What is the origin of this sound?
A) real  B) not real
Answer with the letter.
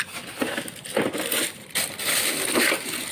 B